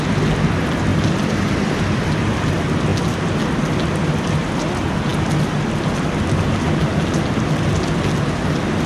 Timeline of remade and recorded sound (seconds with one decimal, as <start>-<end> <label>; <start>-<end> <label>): 0.0-8.9 recorded